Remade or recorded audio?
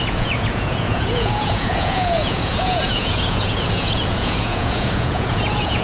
remade